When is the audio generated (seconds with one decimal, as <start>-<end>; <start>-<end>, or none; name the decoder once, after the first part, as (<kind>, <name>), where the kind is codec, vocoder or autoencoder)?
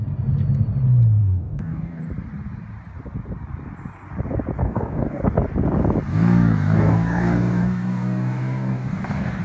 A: 1.2-2.0 (codec, DAC); 4.6-5.2; 6.1-9.4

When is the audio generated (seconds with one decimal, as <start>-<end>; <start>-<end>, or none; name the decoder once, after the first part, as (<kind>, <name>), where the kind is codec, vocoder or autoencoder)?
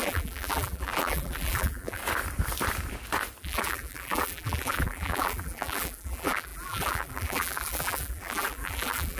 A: 0.0-2.0 (vocoder, BigVGAN v2); 3.4-9.2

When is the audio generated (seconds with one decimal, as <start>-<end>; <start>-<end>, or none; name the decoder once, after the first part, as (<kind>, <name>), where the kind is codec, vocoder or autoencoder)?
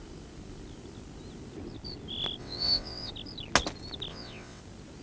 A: 2.4-3.1 (vocoder, WaveNeXt); 4.1-4.6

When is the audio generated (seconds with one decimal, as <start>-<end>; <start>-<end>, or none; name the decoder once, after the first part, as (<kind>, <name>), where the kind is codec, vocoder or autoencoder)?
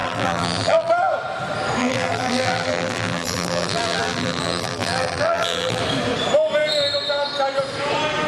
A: 0.0-0.9 (vocoder, BigVGAN v2); 1.8-5.8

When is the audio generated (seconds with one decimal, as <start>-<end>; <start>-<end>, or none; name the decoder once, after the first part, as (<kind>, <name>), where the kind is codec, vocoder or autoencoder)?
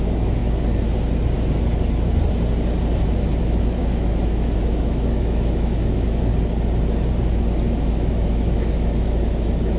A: 0.0-0.4 (autoencoder, DAC-VAE); 3.4-6.3; 7.9-9.8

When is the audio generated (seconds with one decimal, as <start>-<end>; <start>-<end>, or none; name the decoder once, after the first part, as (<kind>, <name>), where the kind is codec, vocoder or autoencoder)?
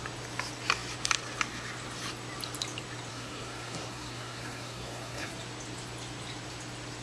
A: 3.1-5.3 (codec, SNAC)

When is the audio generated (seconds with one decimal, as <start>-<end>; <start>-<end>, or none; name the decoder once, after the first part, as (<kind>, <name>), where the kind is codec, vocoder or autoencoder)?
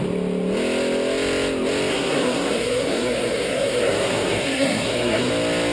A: 1.9-5.3 (codec, SNAC)